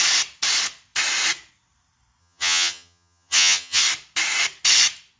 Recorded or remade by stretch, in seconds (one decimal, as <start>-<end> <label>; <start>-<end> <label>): 0.0-2.2 recorded; 2.2-3.8 remade; 3.8-5.2 recorded